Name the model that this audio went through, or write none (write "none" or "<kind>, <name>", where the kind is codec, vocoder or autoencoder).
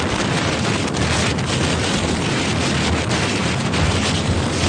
none